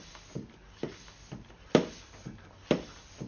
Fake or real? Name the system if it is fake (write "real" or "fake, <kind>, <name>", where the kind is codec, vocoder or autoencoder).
real